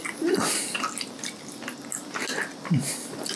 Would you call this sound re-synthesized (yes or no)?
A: no